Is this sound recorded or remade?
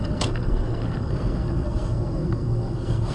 remade